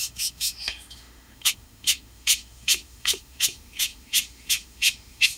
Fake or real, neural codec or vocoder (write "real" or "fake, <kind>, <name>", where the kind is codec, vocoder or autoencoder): fake, autoencoder, DAC-VAE